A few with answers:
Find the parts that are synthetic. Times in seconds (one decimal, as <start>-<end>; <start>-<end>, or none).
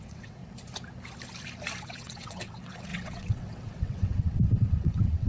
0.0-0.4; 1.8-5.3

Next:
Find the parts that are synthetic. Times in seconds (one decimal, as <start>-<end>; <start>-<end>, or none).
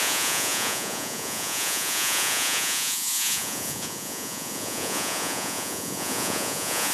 0.0-6.9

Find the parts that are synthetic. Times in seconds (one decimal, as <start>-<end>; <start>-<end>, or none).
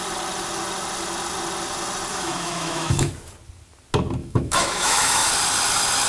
2.1-3.1; 4.2-5.3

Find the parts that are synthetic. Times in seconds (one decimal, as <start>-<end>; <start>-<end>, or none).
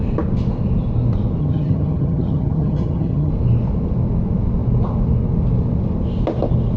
1.4-3.3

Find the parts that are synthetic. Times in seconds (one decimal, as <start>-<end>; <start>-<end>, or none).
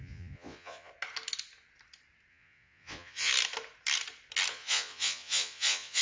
0.0-0.9; 2.3-3.3; 4.5-6.0